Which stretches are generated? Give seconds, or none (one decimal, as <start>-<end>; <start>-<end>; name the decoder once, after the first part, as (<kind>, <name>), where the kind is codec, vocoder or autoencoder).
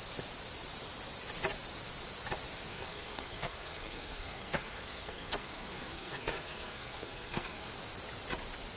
2.7-7.7 (codec, SNAC)